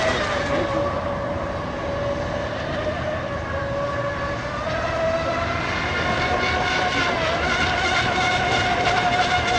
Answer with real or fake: real